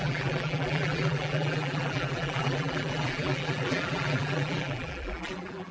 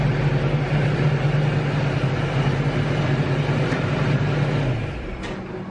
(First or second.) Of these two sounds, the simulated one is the first